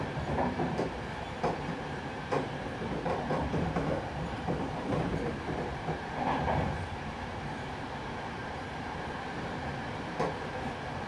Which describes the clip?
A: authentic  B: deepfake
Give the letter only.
B